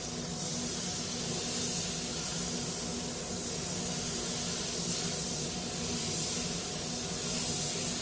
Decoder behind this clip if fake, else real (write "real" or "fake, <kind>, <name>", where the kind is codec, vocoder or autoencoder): real